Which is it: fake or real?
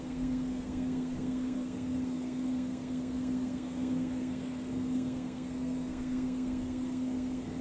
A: fake